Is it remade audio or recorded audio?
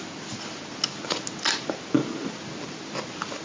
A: recorded